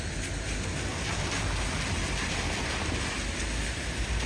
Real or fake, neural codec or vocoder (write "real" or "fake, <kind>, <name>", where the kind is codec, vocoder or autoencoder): real